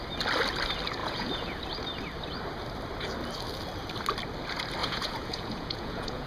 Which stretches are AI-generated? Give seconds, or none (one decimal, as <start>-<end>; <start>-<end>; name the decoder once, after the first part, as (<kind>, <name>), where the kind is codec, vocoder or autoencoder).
1.0-1.6 (vocoder, Vocos); 4.8-6.3